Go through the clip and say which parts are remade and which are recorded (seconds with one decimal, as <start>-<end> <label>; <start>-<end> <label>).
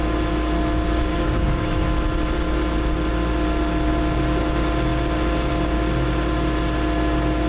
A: 0.0-1.1 recorded; 1.1-1.8 remade; 1.8-7.5 recorded